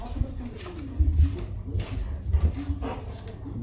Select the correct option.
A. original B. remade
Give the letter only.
A